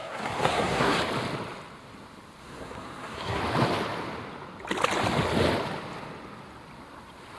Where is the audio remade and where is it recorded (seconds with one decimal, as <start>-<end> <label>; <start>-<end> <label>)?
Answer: 0.0-1.0 remade; 1.0-2.4 recorded; 2.4-3.4 remade; 3.4-7.4 recorded